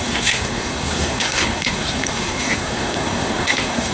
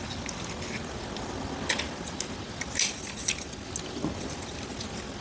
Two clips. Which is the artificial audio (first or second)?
first